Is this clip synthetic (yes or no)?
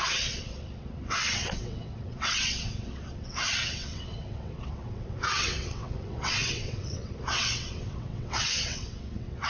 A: yes